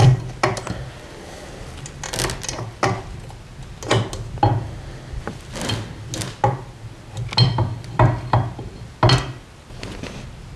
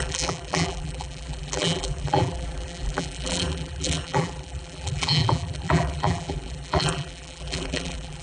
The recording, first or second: first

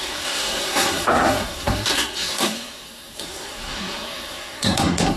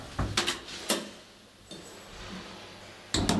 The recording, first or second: second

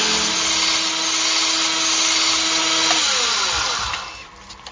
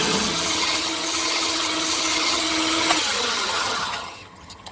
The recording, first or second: first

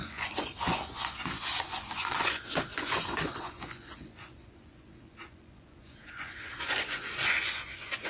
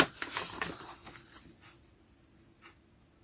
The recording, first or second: second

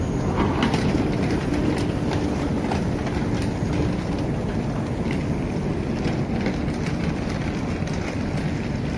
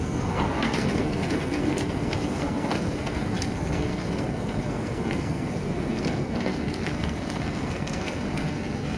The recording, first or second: first